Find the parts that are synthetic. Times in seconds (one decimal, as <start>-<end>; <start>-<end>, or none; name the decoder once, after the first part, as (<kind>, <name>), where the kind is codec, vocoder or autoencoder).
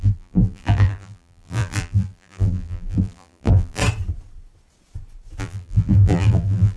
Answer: 0.0-3.8 (vocoder, BigVGAN v2); 5.4-6.8